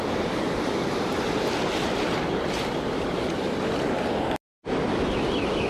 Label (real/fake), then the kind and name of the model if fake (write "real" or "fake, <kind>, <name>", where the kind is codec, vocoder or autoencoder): real